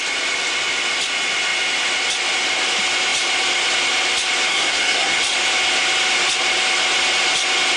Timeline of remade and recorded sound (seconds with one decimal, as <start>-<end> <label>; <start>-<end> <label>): 0.0-4.5 recorded; 4.5-5.2 remade; 5.2-7.8 recorded